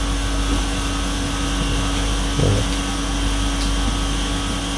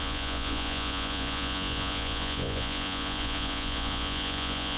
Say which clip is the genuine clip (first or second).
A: first